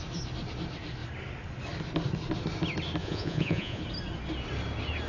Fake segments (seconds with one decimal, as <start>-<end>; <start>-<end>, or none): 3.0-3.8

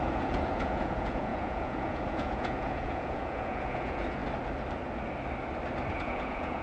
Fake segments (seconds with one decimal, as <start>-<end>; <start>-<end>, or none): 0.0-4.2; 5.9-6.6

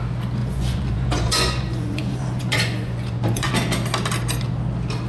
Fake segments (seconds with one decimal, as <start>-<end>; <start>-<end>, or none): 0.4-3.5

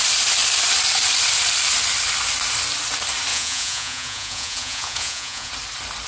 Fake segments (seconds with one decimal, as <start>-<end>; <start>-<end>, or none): 3.3-5.5